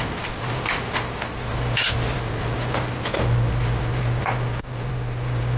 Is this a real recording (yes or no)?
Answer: yes